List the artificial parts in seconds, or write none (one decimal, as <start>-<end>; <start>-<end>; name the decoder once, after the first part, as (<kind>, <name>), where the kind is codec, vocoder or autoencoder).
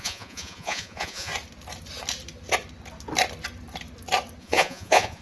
0.0-1.3 (vocoder, Vocos); 4.4-5.2